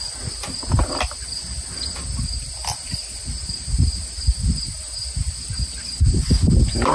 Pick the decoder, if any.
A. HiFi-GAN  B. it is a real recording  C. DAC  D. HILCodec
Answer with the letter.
B